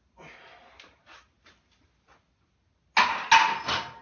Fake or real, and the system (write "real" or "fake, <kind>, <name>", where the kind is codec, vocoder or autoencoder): real